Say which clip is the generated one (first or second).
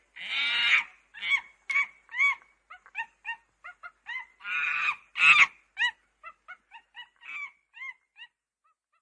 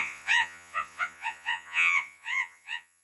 second